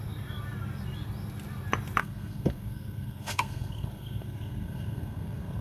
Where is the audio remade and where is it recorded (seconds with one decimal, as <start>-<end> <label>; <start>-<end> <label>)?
0.0-2.0 recorded; 2.0-5.6 remade